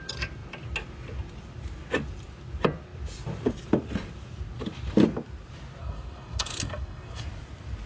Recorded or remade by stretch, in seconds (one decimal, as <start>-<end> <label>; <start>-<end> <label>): 0.0-5.8 recorded; 5.8-7.2 remade; 7.2-7.9 recorded